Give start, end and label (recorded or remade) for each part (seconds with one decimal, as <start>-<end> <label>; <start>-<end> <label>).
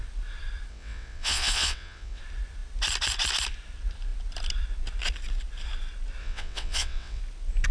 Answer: 0.0-0.7 recorded; 0.7-2.2 remade; 2.2-6.2 recorded; 6.2-7.2 remade; 7.2-7.7 recorded